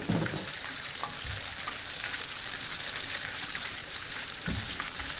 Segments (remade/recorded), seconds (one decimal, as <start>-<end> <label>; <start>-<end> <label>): 0.0-1.0 remade; 1.0-3.0 recorded; 3.0-5.2 remade